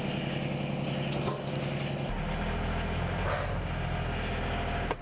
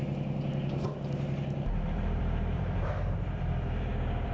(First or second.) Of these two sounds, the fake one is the second